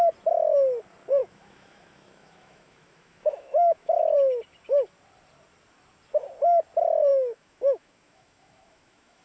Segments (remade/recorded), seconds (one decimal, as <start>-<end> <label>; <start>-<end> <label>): 0.0-1.2 recorded; 1.2-4.0 remade; 4.0-7.1 recorded; 7.1-9.2 remade